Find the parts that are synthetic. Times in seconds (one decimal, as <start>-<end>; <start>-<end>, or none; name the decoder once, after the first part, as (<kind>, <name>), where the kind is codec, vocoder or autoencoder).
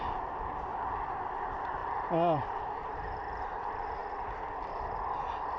0.7-1.4 (vocoder, BigVGAN v2); 1.8-2.6